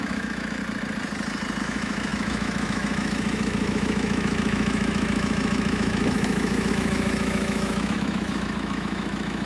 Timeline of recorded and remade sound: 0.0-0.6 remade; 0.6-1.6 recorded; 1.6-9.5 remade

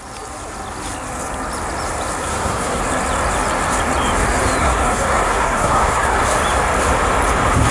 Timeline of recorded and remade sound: 0.0-2.3 recorded; 2.3-2.8 remade; 2.8-4.6 recorded; 4.6-6.2 remade; 6.2-7.7 recorded